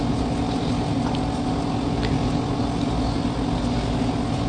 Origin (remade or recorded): recorded